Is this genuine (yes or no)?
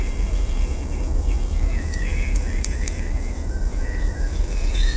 no